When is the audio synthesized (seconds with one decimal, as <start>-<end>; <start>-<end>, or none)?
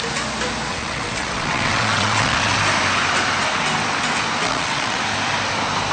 0.7-2.6; 4.4-5.0